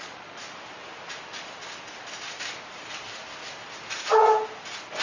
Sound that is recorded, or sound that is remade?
recorded